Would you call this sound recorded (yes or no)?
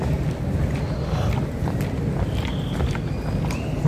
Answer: yes